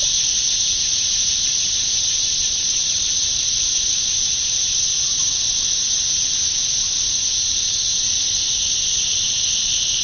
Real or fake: fake